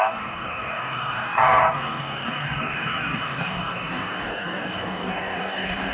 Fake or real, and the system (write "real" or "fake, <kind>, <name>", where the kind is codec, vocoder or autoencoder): fake, codec, DAC